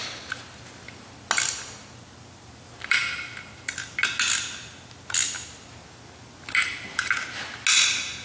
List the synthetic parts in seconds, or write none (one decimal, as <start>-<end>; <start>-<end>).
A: none